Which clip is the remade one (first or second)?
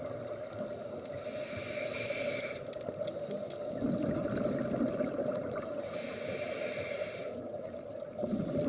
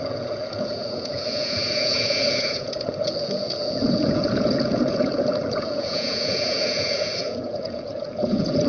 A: second